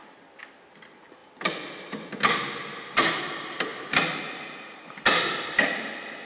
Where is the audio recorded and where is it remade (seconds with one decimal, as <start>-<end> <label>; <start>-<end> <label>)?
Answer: 0.0-1.2 recorded; 1.2-2.1 remade; 2.1-6.2 recorded